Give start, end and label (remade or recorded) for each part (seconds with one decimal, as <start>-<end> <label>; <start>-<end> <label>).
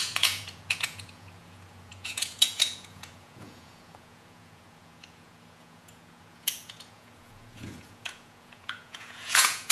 0.0-9.7 remade